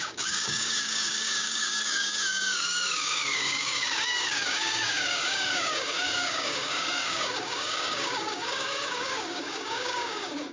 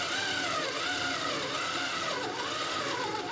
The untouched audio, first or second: second